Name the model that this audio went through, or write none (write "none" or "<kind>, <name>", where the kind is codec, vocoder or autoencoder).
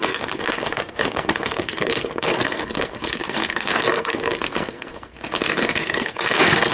codec, SNAC